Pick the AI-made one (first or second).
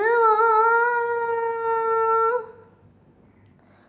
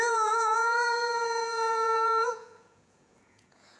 second